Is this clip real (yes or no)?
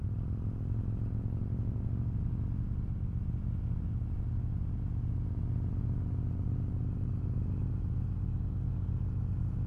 yes